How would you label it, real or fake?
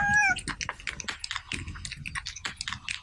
real